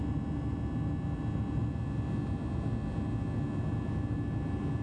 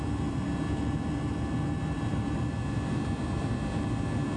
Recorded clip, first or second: first